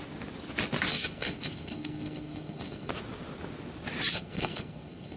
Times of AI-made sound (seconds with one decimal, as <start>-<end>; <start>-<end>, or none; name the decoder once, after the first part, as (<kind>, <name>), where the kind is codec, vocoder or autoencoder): 0.9-2.9 (codec, SNAC); 4.1-5.2